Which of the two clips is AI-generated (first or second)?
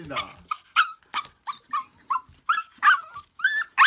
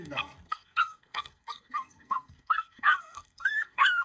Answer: second